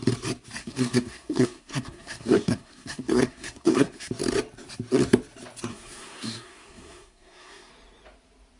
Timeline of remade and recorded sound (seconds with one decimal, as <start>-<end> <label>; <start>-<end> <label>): 0.0-0.6 recorded; 0.6-4.1 remade; 4.1-5.7 recorded; 5.7-7.7 remade; 7.7-8.6 recorded